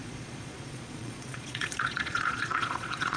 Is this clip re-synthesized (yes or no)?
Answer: yes